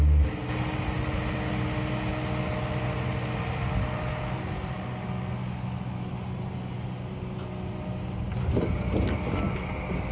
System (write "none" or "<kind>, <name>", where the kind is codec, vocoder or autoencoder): none